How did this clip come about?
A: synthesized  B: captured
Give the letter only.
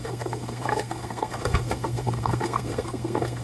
A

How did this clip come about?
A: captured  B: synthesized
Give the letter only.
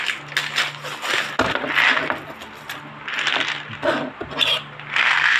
A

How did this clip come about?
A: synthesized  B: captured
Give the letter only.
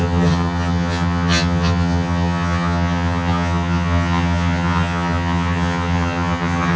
A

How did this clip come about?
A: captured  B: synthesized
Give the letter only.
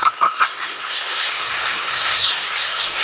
B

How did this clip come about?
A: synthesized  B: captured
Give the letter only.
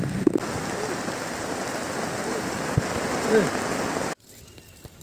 B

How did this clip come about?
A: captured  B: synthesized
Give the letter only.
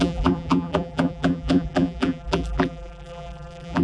B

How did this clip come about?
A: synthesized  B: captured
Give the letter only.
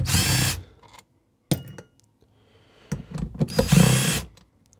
B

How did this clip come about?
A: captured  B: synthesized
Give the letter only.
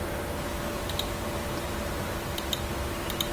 A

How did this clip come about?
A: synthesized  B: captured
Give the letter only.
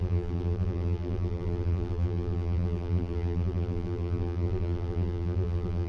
A